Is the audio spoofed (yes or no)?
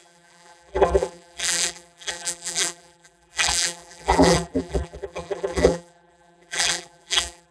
yes